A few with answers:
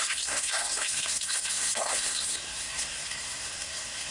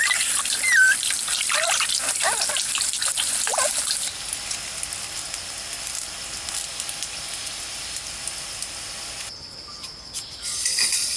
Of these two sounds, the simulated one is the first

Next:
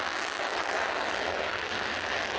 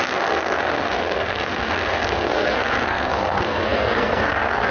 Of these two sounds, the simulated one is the second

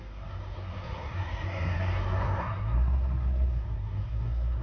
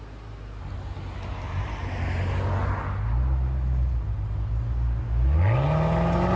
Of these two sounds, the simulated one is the first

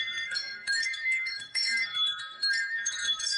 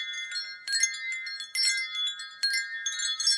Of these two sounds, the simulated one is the first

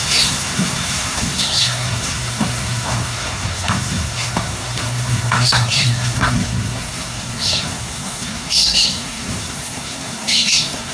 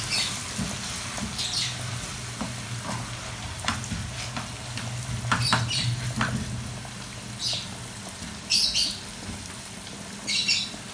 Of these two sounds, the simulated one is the first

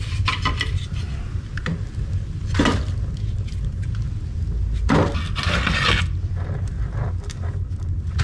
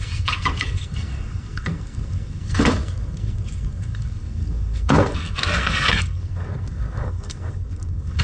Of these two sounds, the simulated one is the second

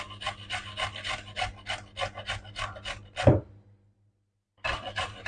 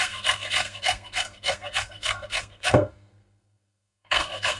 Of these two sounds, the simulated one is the second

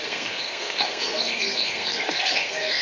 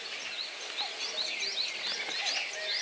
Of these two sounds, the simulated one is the first